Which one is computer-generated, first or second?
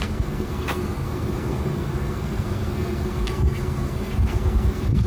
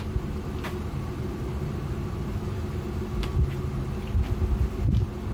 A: first